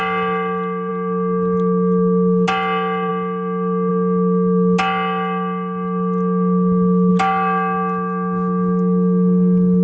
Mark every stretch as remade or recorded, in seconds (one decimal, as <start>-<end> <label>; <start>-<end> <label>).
0.0-9.8 recorded